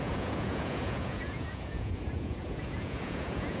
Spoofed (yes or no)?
yes